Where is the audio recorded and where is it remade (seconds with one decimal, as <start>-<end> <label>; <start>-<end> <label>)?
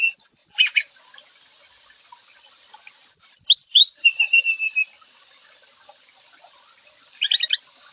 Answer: 0.0-0.4 recorded; 0.4-1.0 remade; 1.0-3.6 recorded; 3.6-4.4 remade; 4.4-7.9 recorded